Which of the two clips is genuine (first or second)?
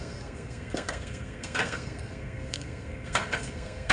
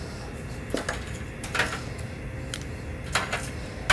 second